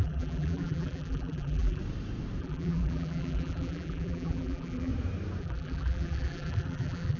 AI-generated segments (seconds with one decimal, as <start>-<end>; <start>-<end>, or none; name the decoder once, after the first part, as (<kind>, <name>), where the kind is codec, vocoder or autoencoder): 0.0-1.8 (vocoder, BigVGAN v2); 2.4-4.9; 5.4-7.2